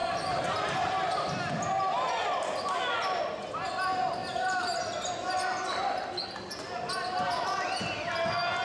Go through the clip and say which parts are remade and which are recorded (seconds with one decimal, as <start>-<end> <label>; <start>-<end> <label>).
0.0-4.2 recorded; 4.2-4.7 remade; 4.7-8.6 recorded